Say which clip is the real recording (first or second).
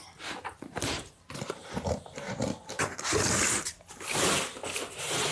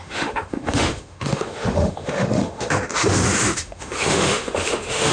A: first